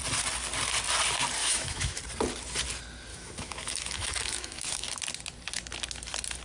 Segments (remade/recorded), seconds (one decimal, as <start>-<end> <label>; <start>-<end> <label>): 0.0-1.4 recorded; 1.4-2.0 remade; 2.0-3.1 recorded; 3.1-4.9 remade; 4.9-6.4 recorded